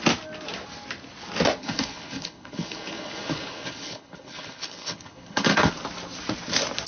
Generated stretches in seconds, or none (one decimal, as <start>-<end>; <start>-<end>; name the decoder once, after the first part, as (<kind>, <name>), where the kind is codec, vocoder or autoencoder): 1.6-5.7 (codec, HILCodec)